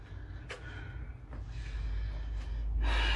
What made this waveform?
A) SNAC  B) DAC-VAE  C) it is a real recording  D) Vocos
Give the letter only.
C